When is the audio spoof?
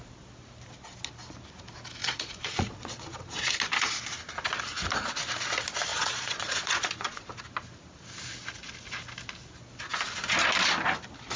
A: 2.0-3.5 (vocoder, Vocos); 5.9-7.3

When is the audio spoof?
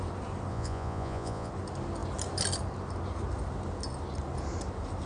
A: 0.5-1.5 (vocoder, Vocos)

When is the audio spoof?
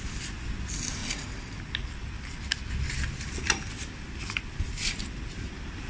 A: none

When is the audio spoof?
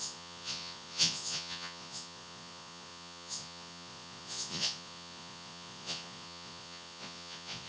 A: 0.0-7.7 (vocoder, Vocos)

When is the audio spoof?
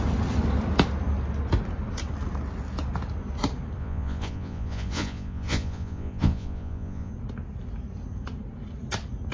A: 3.8-7.1 (vocoder, Vocos)